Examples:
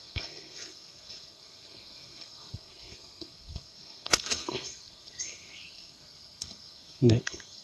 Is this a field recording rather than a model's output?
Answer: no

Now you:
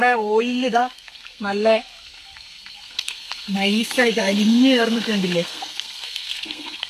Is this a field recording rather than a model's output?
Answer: no